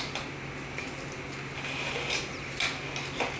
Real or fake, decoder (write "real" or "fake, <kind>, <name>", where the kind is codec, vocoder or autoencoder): real